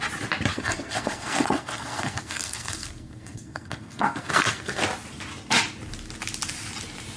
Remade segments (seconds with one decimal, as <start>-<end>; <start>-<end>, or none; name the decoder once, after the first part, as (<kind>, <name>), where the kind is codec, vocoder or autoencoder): 0.5-4.8 (codec, SNAC)